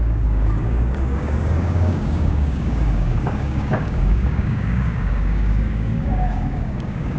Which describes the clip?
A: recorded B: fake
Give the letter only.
B